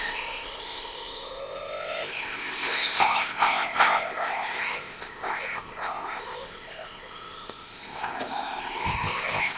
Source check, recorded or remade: remade